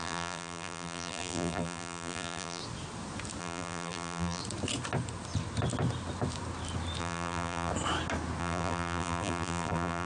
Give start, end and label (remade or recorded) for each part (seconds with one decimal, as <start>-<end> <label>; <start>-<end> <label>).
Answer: 0.0-2.6 remade; 2.6-3.4 recorded; 3.4-4.4 remade; 4.4-7.0 recorded; 7.0-7.7 remade; 7.7-8.4 recorded; 8.4-10.1 remade

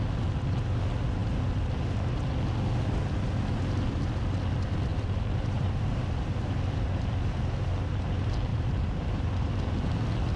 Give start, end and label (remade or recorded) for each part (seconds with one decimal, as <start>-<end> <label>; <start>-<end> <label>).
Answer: 0.0-4.9 recorded; 4.9-6.5 remade; 6.5-8.5 recorded; 8.5-9.7 remade; 9.7-10.4 recorded

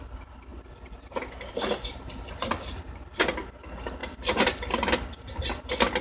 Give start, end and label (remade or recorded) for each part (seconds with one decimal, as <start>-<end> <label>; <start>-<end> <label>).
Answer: 0.0-0.5 recorded; 0.5-1.5 remade; 1.5-1.9 recorded; 1.9-3.3 remade; 3.3-4.0 recorded; 4.0-4.9 remade; 4.9-6.0 recorded

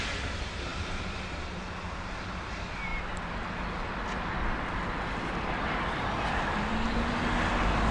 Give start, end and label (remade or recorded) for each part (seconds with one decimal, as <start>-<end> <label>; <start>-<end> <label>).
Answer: 0.0-7.9 recorded